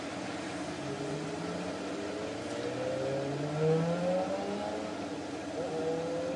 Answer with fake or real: real